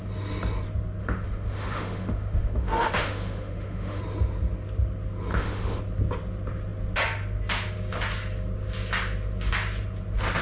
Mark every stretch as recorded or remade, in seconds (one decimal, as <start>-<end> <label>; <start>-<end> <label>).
0.0-1.0 recorded; 1.0-4.0 remade; 4.0-5.3 recorded; 5.3-5.8 remade; 5.8-10.4 recorded